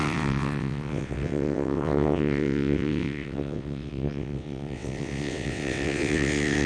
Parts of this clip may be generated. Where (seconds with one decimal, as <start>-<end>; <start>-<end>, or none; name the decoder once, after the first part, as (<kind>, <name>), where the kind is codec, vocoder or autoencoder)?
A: 0.0-6.7 (vocoder, WaveNeXt)